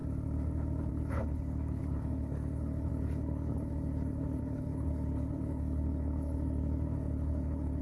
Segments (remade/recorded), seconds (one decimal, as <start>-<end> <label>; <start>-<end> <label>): 0.0-0.9 recorded; 0.9-7.8 remade